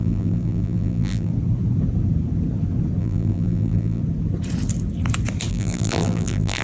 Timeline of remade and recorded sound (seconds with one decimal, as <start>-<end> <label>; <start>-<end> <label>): 0.0-1.3 remade; 1.3-3.0 recorded; 3.0-4.0 remade; 4.0-5.5 recorded; 5.5-6.6 remade